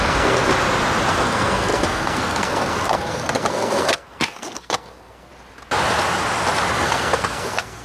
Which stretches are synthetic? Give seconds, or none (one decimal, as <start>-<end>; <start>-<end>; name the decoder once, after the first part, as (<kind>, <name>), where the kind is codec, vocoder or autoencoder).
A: 0.0-0.5 (codec, SNAC); 1.1-5.3; 6.7-7.8